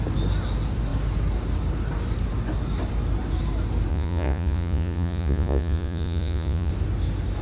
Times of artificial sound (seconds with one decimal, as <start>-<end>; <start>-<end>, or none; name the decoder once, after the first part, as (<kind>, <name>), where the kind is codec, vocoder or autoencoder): 3.9-6.7 (vocoder, Vocos)